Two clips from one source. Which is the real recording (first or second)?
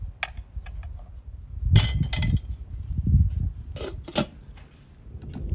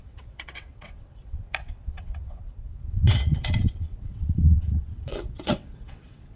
first